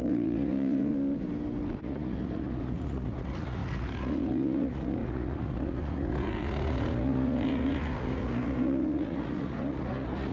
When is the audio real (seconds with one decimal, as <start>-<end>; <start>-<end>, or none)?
0.9-1.8